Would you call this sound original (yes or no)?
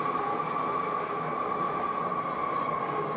yes